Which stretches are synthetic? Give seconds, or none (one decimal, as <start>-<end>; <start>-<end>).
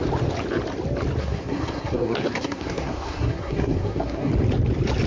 1.2-4.3